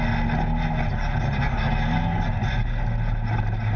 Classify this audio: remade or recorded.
recorded